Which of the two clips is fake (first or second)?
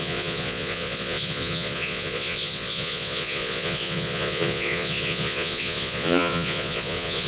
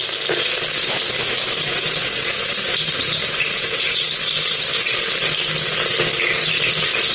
first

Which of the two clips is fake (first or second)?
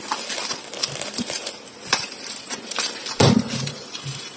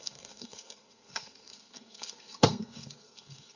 second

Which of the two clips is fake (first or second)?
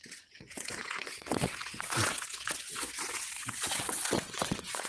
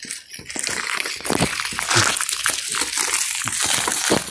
first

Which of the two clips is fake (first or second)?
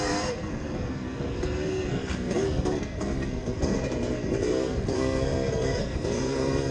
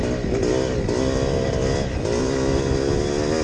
first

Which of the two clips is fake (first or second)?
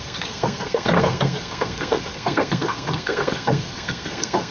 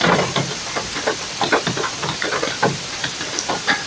first